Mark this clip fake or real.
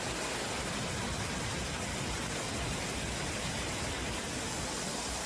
real